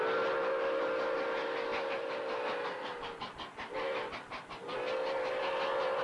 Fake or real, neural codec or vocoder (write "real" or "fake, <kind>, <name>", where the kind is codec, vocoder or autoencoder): real